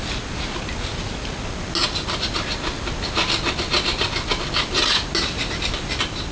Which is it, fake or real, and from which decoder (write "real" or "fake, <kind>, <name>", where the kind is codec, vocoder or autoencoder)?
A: real